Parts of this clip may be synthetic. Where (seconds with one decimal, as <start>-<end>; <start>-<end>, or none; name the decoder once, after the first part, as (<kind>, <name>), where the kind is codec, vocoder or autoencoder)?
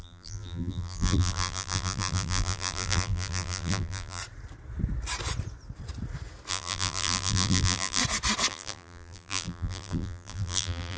0.0-4.2 (vocoder, BigVGAN v2); 6.5-8.0; 8.5-11.0